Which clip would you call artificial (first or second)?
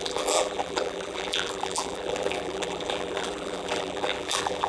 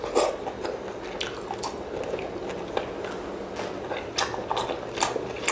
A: first